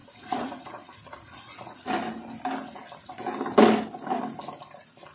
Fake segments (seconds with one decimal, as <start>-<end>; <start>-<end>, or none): 0.0-1.9